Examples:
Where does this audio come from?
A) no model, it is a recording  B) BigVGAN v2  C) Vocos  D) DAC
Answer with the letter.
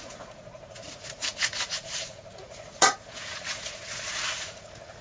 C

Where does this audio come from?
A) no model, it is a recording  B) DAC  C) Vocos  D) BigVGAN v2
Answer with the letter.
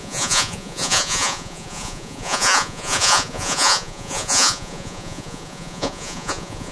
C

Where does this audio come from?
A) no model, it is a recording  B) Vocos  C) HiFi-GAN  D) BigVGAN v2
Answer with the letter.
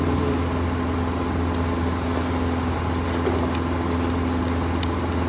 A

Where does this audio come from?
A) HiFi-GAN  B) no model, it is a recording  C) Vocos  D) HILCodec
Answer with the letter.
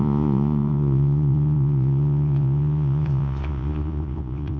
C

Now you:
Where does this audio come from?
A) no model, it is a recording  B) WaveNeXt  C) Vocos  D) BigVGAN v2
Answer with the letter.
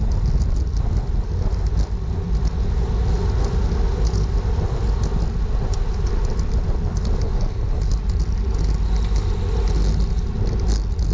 A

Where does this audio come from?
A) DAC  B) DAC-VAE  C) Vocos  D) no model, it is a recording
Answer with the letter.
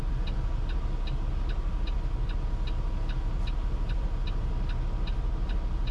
D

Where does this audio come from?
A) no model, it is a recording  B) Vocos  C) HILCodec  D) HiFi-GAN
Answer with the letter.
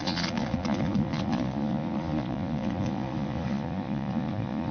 B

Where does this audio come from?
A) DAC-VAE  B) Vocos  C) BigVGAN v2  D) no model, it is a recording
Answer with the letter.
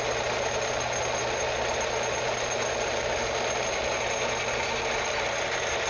D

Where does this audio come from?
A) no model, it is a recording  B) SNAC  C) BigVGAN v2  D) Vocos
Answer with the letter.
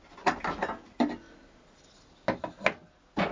A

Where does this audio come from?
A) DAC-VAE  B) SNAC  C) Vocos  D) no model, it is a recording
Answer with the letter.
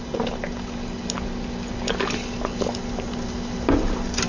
D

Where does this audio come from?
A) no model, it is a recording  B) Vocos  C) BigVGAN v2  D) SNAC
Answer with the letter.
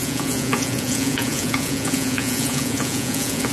B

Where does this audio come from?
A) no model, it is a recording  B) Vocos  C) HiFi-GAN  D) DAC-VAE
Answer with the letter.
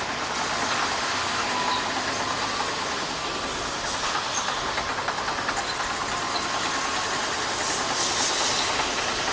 A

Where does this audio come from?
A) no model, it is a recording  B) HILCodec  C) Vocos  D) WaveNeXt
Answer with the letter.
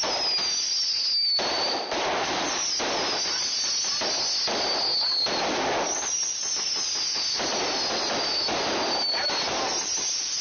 A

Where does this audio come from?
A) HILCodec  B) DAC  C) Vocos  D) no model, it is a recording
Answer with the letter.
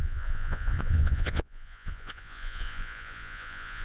C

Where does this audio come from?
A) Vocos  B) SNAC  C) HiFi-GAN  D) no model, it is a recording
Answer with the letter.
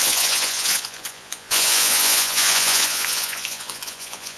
A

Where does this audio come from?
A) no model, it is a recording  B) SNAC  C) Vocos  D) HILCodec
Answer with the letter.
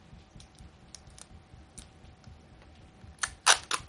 A